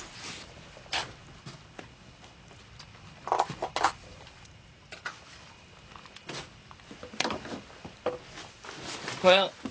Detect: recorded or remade recorded